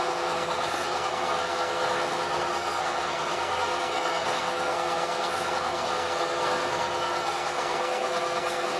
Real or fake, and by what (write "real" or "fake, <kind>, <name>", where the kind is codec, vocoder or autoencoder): fake, codec, SNAC